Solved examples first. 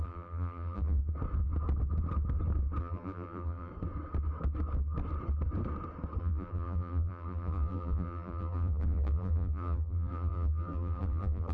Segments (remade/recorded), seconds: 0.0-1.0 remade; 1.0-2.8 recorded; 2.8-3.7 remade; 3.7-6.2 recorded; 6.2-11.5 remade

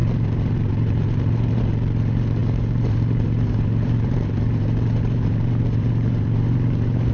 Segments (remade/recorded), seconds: 0.0-1.6 remade; 1.6-2.4 recorded; 2.4-7.1 remade

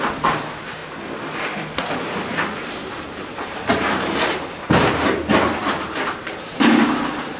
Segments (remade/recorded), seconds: 0.0-0.8 remade; 0.8-2.6 recorded; 2.6-7.4 remade

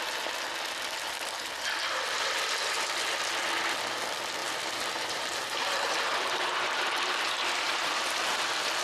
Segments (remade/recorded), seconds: 0.0-4.4 recorded; 4.4-8.2 remade; 8.2-8.8 recorded

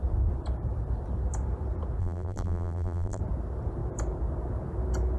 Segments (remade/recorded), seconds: 0.0-2.0 recorded; 2.0-3.2 remade; 3.2-5.2 recorded